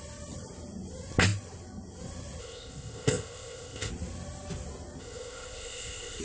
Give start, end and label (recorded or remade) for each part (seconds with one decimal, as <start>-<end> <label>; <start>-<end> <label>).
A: 0.0-2.4 recorded; 2.4-3.9 remade; 3.9-5.0 recorded; 5.0-6.2 remade